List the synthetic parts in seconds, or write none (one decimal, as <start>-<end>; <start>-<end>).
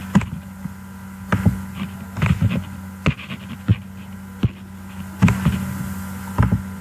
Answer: none